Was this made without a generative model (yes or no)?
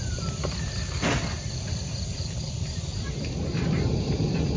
no